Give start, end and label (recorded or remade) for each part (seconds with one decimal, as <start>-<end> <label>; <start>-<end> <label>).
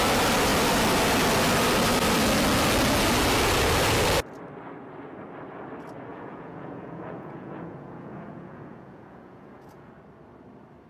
0.0-6.1 recorded; 6.1-9.9 remade; 9.9-10.9 recorded